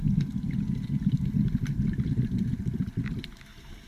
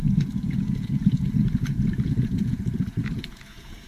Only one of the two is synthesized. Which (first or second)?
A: second